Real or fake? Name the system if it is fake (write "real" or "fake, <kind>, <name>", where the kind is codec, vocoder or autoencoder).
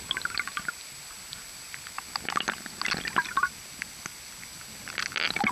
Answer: real